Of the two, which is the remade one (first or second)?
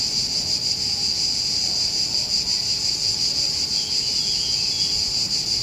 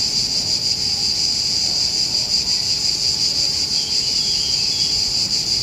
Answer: second